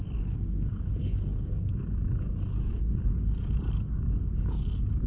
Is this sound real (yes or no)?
no